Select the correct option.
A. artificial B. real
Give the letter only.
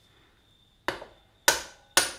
B